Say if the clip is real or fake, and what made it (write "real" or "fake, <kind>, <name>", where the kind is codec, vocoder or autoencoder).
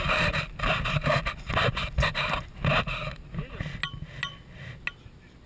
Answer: real